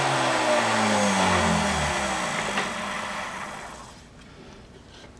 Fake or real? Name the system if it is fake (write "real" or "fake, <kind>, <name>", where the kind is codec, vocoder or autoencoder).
real